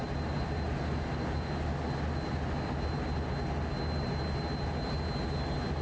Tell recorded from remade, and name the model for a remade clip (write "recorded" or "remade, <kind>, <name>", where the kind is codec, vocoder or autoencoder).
recorded